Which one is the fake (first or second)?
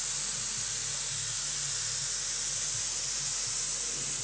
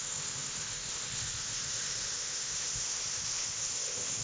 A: second